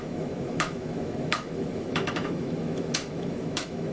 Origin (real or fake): fake